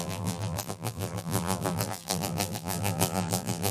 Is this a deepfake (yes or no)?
yes